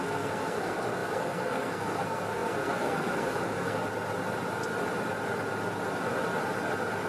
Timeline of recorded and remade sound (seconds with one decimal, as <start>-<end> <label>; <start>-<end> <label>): 0.0-3.8 remade; 3.8-7.1 recorded